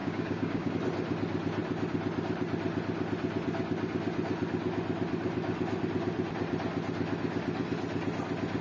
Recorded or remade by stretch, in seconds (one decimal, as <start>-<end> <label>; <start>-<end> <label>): 0.0-0.7 remade; 0.7-8.6 recorded